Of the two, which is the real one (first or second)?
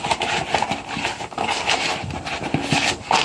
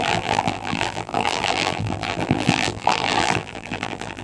first